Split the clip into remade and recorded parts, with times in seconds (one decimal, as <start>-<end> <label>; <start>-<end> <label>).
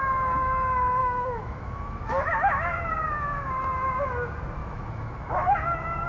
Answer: 0.0-1.0 recorded; 1.0-3.5 remade; 3.5-4.6 recorded; 4.6-6.1 remade